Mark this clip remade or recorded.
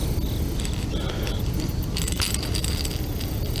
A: recorded